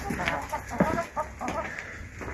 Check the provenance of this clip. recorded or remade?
recorded